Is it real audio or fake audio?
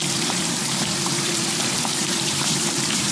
fake